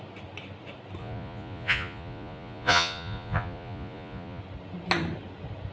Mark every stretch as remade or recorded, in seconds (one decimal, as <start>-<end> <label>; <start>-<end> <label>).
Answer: 0.0-1.0 recorded; 1.0-4.4 remade; 4.4-5.7 recorded